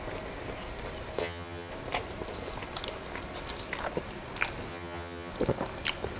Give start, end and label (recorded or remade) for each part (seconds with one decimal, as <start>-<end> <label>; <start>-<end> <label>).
0.0-1.2 recorded; 1.2-1.7 remade; 1.7-4.7 recorded; 4.7-5.3 remade; 5.3-6.2 recorded